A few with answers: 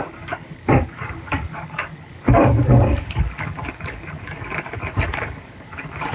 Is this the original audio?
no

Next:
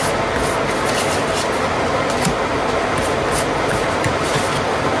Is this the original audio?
yes